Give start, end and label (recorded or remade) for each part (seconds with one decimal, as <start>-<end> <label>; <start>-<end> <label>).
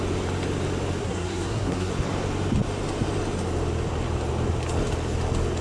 0.0-1.0 recorded; 1.0-1.9 remade; 1.9-5.6 recorded